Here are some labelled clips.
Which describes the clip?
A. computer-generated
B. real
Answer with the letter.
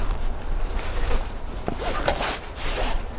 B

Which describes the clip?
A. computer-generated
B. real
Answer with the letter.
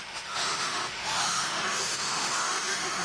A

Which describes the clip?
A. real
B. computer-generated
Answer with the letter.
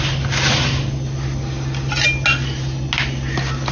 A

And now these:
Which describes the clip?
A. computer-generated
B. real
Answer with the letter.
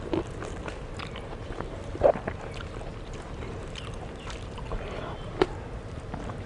B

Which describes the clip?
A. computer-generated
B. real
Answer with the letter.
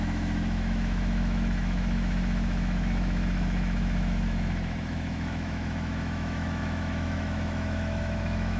A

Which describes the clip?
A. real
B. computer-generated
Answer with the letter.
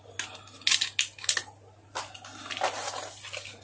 A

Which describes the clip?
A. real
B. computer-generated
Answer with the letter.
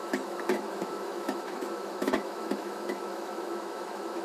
B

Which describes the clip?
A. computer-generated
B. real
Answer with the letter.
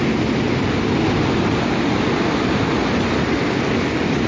B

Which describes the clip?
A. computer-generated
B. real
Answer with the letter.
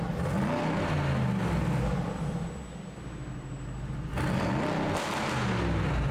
B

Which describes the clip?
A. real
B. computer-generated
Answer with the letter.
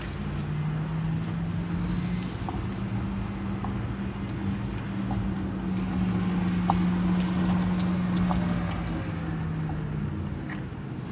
A